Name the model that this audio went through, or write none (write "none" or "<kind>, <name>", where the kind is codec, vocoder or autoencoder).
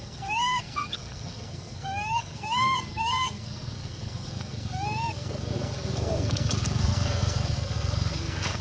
codec, SNAC